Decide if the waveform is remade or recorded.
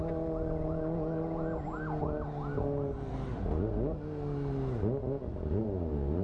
recorded